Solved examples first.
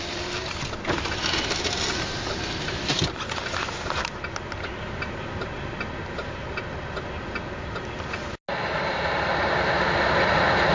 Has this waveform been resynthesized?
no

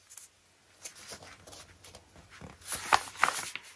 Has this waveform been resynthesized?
no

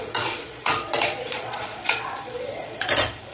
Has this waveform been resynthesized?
yes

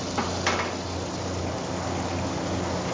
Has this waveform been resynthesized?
no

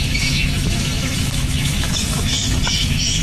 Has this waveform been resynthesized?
yes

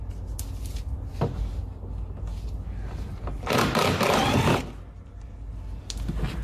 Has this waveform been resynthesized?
no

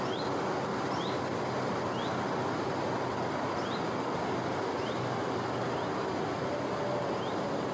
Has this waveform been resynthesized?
no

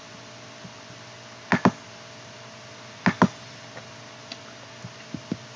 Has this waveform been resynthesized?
no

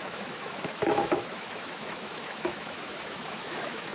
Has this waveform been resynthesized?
yes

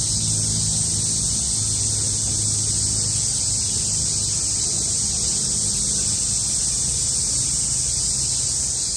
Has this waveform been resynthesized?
no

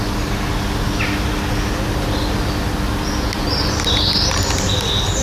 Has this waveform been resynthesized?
no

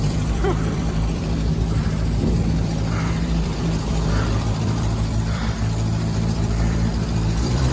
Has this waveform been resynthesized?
yes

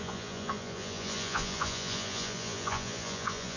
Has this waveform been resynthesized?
yes